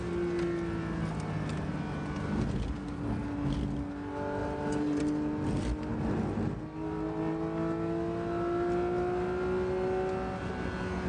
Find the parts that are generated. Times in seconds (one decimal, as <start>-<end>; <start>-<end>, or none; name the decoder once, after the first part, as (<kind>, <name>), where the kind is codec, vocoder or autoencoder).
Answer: 4.4-5.0 (vocoder, BigVGAN v2)